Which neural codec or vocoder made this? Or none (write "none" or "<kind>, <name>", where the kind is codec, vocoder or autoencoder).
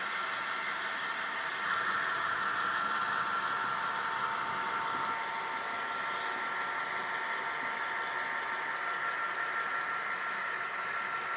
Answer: none